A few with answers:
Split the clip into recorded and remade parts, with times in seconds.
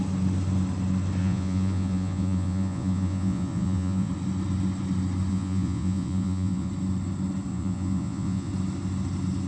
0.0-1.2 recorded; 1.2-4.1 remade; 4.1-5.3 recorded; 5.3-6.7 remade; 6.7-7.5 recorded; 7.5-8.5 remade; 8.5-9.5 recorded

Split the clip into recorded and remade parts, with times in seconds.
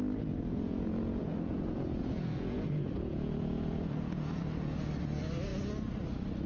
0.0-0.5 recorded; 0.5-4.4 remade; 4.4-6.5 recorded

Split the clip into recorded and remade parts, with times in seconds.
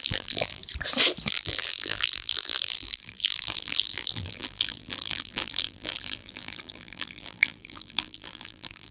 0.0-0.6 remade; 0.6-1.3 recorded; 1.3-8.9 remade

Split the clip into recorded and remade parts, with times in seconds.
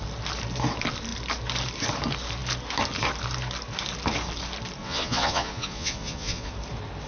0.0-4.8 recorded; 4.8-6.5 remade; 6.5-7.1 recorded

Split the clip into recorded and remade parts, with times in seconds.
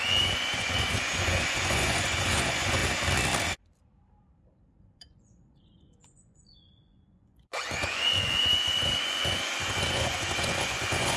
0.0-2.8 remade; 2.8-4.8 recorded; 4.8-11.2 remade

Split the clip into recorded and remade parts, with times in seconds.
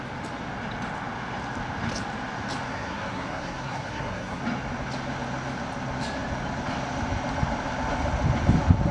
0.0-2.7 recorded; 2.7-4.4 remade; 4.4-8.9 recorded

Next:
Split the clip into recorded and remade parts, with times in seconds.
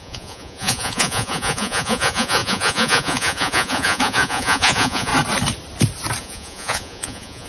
0.0-5.1 remade; 5.1-6.2 recorded; 6.2-7.5 remade